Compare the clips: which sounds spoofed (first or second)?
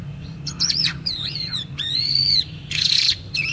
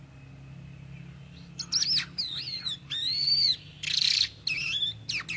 first